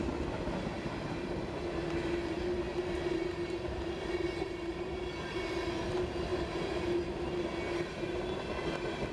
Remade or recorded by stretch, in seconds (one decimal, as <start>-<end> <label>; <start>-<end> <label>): 0.0-2.7 recorded; 2.7-5.1 remade; 5.1-6.3 recorded; 6.3-6.9 remade; 6.9-9.1 recorded